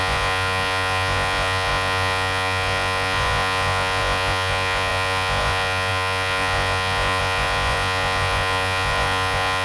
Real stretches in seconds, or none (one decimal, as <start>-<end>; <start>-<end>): none